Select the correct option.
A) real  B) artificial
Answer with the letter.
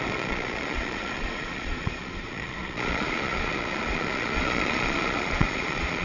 B